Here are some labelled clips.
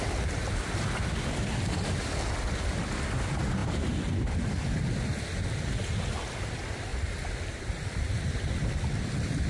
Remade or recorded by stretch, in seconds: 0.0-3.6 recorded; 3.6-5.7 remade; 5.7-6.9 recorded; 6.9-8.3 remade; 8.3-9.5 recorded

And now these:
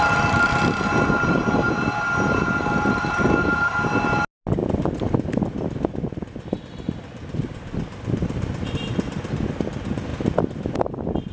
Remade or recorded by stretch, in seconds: 0.0-11.3 recorded

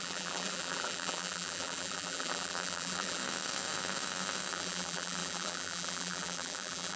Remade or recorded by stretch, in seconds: 0.0-3.2 remade; 3.2-4.5 recorded; 4.5-7.0 remade

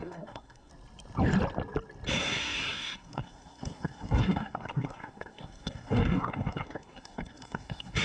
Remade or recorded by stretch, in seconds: 0.0-0.7 remade; 0.7-2.2 recorded; 2.2-8.0 remade

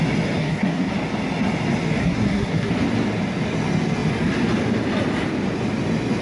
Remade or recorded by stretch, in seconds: 0.0-0.4 recorded; 0.4-0.9 remade; 0.9-2.0 recorded; 2.0-2.7 remade; 2.7-6.2 recorded